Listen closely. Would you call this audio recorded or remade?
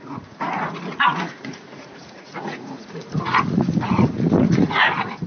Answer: remade